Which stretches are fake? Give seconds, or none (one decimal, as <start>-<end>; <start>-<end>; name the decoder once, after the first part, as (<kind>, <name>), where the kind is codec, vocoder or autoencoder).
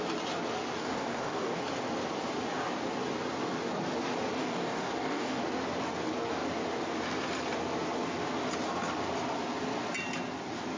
0.8-1.6 (codec, DAC); 4.4-5.4